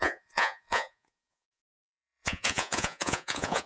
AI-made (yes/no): yes